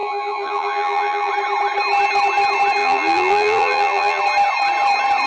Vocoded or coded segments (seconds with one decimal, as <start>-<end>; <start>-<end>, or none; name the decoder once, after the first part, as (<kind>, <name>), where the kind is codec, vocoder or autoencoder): 0.0-1.3 (vocoder, BigVGAN v2); 2.8-4.2